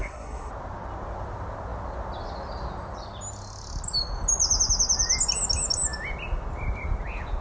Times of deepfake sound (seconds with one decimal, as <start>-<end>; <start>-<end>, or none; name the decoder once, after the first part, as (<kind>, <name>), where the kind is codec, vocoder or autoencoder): 0.0-0.5 (codec, SNAC)